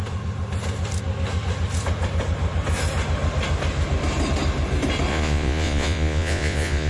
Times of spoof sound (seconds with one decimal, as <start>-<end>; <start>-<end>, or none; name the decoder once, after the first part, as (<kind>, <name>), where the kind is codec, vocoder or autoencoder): 5.1-6.9 (vocoder, Vocos)

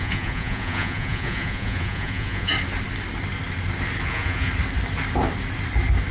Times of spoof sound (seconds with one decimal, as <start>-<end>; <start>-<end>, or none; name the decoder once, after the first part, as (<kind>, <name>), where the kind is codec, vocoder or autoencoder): 0.0-2.5 (vocoder, Vocos); 4.1-4.5

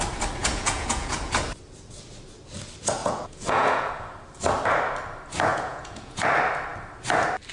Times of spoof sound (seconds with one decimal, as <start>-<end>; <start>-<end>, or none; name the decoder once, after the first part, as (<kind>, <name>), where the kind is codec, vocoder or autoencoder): 0.4-1.4 (vocoder, Vocos); 3.0-3.9; 5.5-6.3

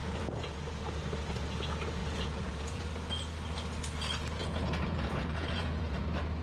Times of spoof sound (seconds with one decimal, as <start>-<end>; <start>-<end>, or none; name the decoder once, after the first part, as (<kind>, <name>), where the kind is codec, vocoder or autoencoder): 0.0-0.8 (vocoder, Vocos); 2.0-2.8; 4.4-6.0

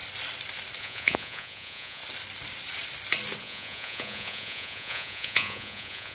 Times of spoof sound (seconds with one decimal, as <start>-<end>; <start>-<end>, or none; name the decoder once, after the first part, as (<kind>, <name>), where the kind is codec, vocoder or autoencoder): 0.8-2.0 (vocoder, Vocos); 3.4-6.1

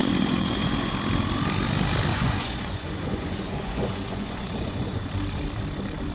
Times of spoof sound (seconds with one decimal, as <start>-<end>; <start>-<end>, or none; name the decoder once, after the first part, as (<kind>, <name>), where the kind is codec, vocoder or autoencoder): 0.0-0.9 (vocoder, Vocos); 2.1-5.1

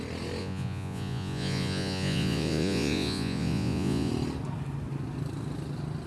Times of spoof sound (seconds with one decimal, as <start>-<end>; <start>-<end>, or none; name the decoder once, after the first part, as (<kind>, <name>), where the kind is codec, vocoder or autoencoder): 0.4-4.1 (vocoder, Vocos)